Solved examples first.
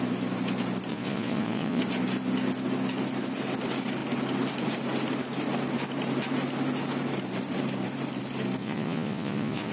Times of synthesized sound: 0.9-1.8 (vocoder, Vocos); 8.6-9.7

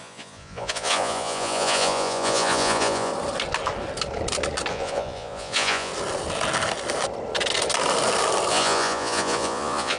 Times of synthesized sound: 0.0-3.1 (vocoder, Vocos); 4.7-5.9; 8.5-10.0

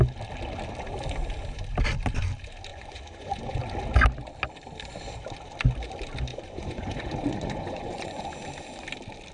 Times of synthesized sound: 2.7-3.6 (vocoder, Vocos); 6.3-8.2

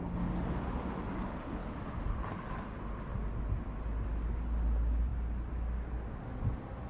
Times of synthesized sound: none